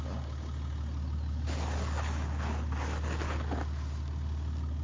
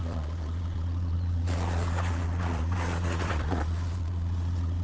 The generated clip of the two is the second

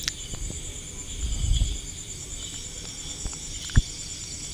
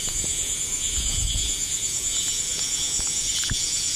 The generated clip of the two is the second